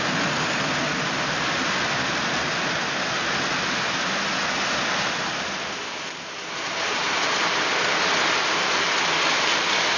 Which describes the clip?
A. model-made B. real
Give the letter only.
B